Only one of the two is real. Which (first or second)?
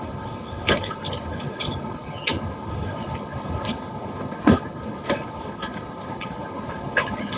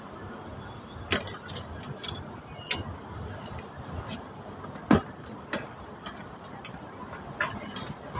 second